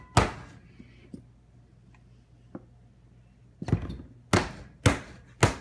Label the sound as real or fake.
real